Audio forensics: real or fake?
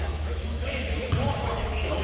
fake